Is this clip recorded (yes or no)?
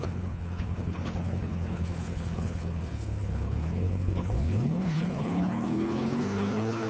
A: no